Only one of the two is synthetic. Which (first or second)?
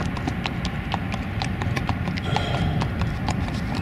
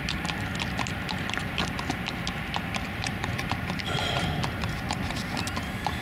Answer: second